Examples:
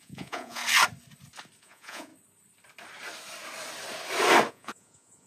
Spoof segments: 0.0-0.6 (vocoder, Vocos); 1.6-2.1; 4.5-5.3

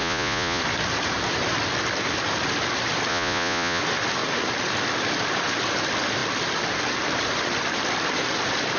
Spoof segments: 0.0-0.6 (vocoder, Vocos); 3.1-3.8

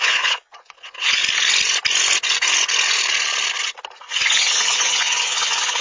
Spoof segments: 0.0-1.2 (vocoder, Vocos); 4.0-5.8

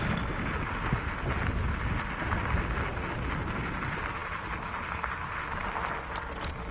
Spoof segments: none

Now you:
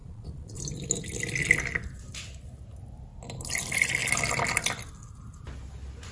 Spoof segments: 0.0-0.6 (vocoder, Vocos)

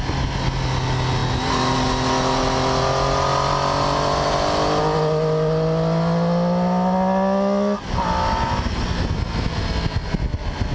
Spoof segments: none